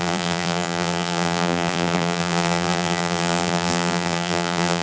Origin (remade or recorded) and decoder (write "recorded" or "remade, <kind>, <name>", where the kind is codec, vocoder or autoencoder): remade, vocoder, BigVGAN v2